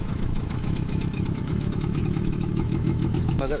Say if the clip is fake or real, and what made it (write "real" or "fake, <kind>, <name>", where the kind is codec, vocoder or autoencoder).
fake, autoencoder, DAC-VAE